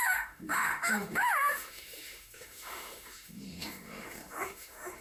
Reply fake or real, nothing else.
fake